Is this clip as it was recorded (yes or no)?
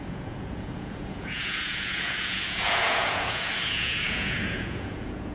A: no